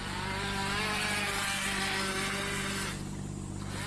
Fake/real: real